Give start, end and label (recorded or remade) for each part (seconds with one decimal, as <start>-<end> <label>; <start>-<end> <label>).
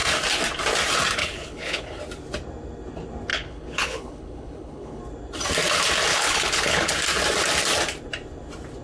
0.0-1.2 recorded; 1.2-2.0 remade; 2.0-3.3 recorded; 3.3-5.0 remade; 5.0-6.1 recorded; 6.1-6.9 remade; 6.9-8.8 recorded